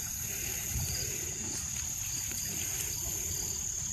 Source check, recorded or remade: remade